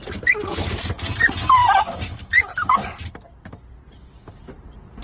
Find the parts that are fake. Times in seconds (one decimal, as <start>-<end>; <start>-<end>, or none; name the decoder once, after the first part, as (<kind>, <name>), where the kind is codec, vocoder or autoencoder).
none